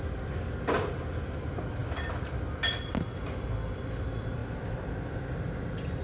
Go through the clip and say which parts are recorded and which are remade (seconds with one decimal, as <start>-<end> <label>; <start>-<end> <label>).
0.0-6.0 recorded

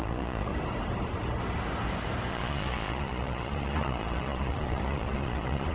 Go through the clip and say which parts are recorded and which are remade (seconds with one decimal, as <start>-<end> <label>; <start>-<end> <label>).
0.0-0.5 remade; 0.5-2.3 recorded; 2.3-5.7 remade